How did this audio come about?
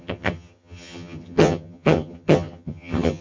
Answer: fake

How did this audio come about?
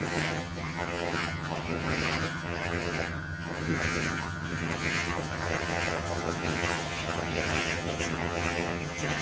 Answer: fake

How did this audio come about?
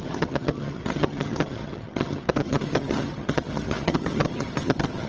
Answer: fake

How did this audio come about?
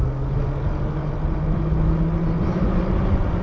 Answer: real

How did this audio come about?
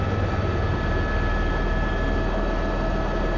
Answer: real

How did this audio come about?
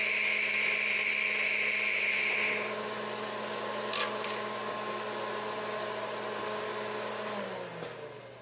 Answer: real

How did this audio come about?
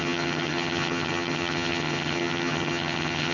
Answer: fake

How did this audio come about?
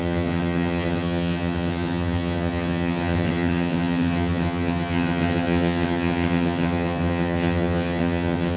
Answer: fake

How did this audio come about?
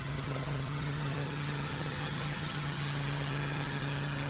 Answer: fake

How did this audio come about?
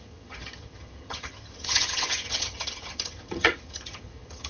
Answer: fake